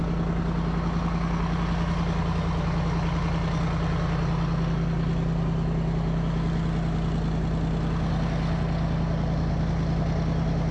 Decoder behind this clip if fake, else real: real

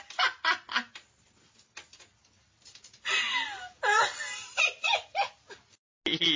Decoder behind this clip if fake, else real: real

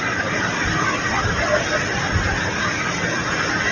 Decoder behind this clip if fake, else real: real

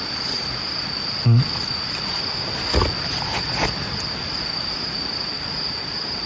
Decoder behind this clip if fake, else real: real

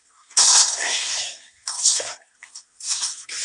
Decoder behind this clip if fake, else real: fake, codec, SNAC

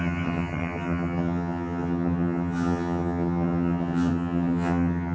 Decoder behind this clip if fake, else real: fake, vocoder, HiFi-GAN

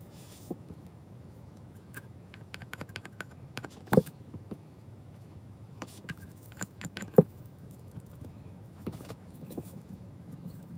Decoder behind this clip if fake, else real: fake, autoencoder, DAC-VAE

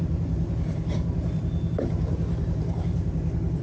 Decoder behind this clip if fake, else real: fake, vocoder, BigVGAN v2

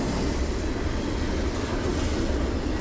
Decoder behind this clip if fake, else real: real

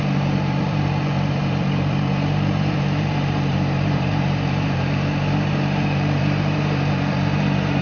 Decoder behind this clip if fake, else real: fake, vocoder, BigVGAN v2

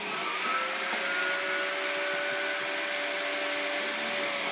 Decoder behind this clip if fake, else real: real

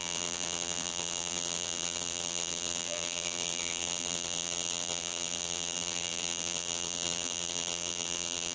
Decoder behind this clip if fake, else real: fake, vocoder, BigVGAN v2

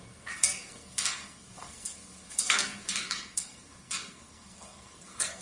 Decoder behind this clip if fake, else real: fake, codec, SNAC